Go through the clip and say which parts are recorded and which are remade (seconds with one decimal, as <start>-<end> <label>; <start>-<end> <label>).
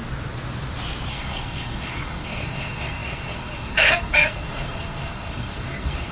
0.0-1.1 recorded; 1.1-6.1 remade